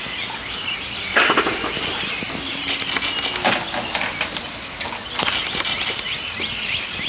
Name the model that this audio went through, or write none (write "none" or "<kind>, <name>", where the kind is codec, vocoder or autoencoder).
none